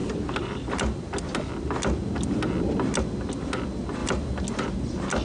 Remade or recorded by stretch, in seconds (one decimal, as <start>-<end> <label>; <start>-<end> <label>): 0.0-5.2 recorded